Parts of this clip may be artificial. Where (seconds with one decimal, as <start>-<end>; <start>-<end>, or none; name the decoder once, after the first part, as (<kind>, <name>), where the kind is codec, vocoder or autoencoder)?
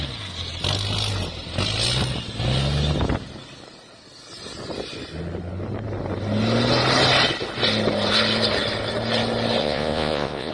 9.6-10.5 (vocoder, Vocos)